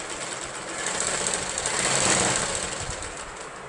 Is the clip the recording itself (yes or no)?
yes